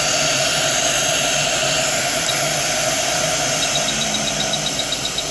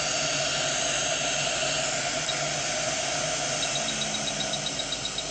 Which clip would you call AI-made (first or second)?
first